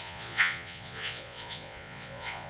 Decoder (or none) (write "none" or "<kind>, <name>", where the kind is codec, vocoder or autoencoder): vocoder, Vocos